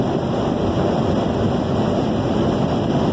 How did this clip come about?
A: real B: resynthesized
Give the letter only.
A